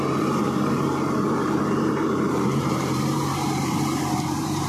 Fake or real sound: fake